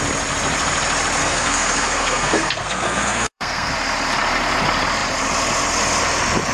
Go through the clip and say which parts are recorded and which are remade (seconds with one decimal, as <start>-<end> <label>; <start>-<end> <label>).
0.0-1.2 recorded; 1.2-3.7 remade; 3.7-6.5 recorded